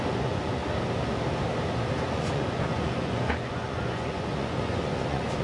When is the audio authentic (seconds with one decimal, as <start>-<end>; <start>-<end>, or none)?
0.6-2.1